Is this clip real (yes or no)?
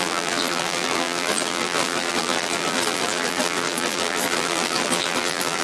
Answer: no